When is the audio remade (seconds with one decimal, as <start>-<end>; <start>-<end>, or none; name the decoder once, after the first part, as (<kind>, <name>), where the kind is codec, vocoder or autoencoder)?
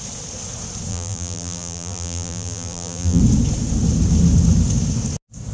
0.9-3.2 (vocoder, BigVGAN v2)